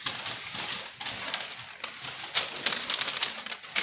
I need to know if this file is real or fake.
real